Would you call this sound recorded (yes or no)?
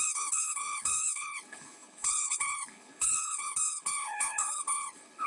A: no